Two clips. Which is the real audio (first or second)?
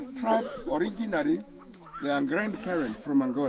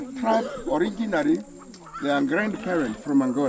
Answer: second